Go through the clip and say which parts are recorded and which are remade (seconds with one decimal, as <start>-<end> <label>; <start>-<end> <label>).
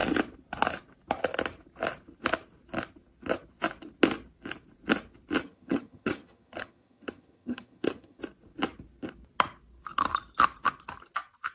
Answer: 0.0-5.4 recorded; 5.4-8.2 remade; 8.2-11.5 recorded